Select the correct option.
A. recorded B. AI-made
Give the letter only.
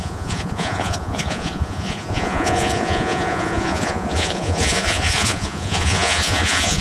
B